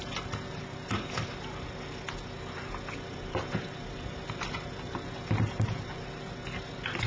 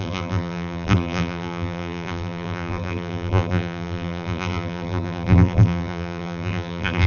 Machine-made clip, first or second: second